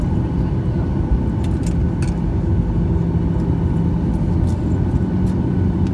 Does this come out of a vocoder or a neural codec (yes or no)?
no